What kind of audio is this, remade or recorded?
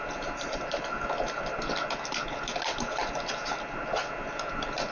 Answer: recorded